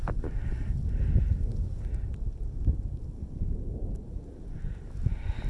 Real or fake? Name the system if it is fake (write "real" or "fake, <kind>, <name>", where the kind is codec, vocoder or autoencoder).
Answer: real